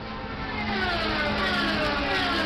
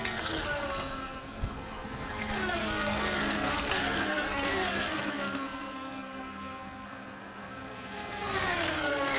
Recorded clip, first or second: first